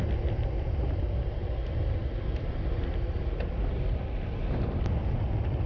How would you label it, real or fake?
real